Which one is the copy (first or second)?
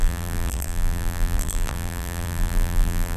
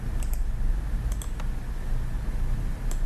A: first